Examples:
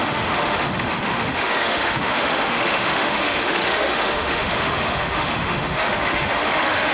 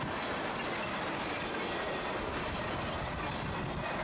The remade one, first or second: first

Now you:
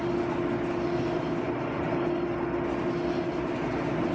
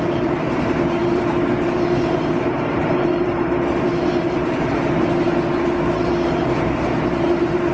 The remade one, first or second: second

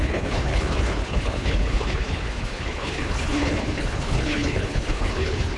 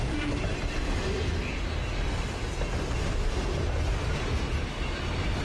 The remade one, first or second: first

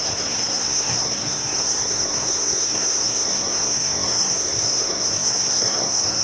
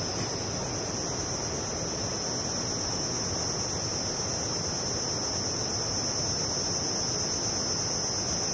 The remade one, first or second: first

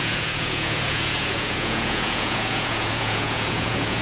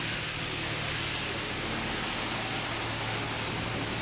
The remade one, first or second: first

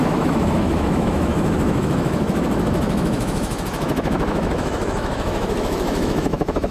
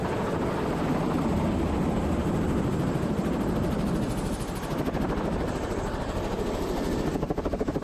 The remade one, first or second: first